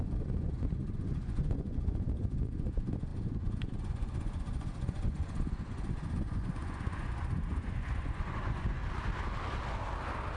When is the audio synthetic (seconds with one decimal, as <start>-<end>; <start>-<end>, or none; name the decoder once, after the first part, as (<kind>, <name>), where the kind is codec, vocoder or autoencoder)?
0.0-8.8 (vocoder, Vocos)